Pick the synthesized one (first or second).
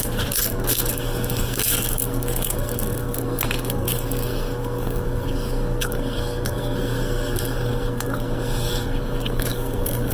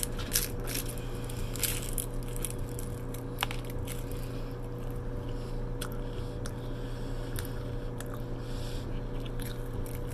first